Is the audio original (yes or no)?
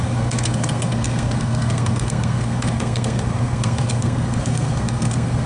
no